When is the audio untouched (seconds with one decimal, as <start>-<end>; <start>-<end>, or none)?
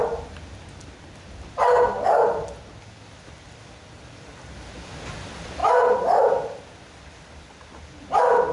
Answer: 0.0-2.8